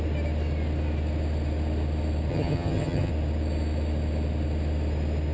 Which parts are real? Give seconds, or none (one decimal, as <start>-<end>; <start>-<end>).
0.0-2.3; 3.1-5.3